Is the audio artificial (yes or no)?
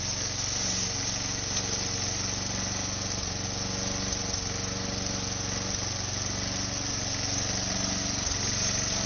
no